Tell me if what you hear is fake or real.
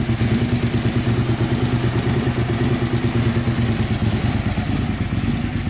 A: real